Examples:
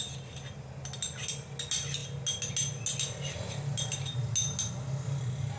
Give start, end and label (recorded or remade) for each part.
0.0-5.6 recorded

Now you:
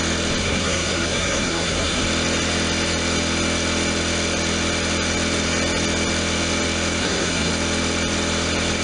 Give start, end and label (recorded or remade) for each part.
0.0-0.4 recorded; 0.4-2.0 remade; 2.0-7.0 recorded; 7.0-7.5 remade; 7.5-8.8 recorded

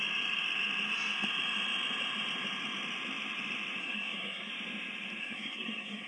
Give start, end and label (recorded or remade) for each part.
0.0-3.8 recorded; 3.8-4.5 remade; 4.5-5.2 recorded; 5.2-6.1 remade

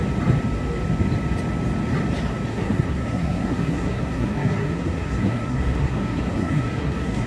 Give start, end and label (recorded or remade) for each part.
0.0-2.5 recorded; 2.5-7.3 remade

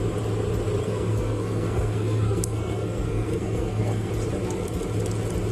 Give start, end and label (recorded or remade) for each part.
0.0-0.8 recorded; 0.8-4.1 remade; 4.1-5.5 recorded